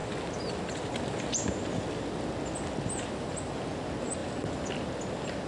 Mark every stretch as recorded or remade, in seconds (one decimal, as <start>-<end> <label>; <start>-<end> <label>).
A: 0.0-5.5 recorded

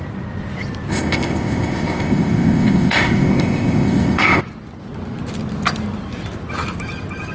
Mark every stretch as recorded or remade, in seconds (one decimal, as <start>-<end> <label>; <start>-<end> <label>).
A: 0.0-0.9 recorded; 0.9-4.4 remade; 4.4-7.3 recorded

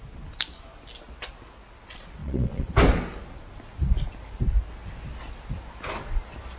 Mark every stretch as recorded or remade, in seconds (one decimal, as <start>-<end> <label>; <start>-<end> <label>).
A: 0.0-2.2 recorded; 2.2-2.7 remade; 2.7-6.6 recorded

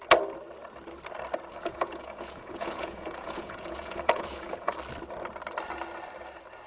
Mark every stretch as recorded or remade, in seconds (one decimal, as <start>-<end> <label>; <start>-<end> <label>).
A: 0.0-1.5 recorded; 1.5-4.7 remade; 4.7-6.7 recorded

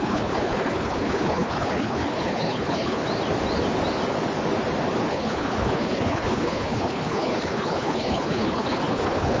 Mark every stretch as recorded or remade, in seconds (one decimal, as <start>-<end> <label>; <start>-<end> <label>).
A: 0.0-3.0 remade; 3.0-5.1 recorded; 5.1-9.4 remade

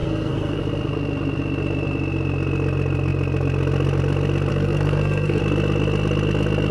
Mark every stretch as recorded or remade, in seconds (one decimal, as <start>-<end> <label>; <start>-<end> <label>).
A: 0.0-0.6 remade; 0.6-4.5 recorded; 4.5-5.4 remade; 5.4-6.7 recorded